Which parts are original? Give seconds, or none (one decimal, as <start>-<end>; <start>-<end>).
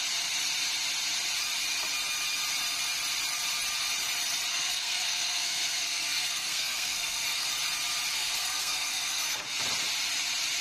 0.0-4.5; 7.5-8.1; 9.4-10.6